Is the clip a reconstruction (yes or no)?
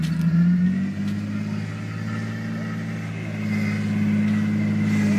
no